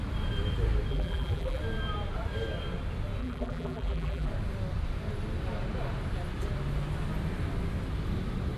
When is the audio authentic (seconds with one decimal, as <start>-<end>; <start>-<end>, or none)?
0.0-0.9; 1.6-3.2; 4.3-8.6